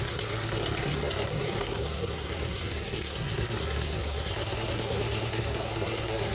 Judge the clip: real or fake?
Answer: fake